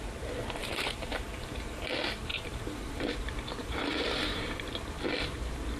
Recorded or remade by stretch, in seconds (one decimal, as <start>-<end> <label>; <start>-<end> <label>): 0.0-0.6 recorded; 0.6-1.9 remade; 1.9-2.3 recorded; 2.3-3.1 remade; 3.1-3.6 recorded; 3.6-4.7 remade; 4.7-5.8 recorded